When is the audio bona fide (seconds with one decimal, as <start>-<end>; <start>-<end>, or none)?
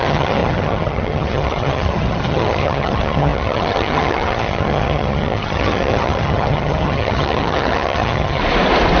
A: 8.4-9.0